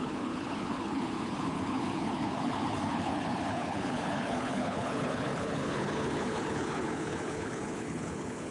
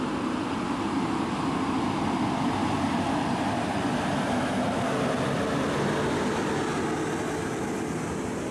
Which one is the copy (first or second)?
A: first